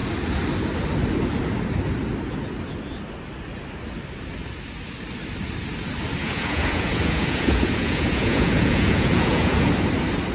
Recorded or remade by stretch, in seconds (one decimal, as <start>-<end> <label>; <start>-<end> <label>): 0.0-6.2 recorded; 6.2-9.7 remade; 9.7-10.3 recorded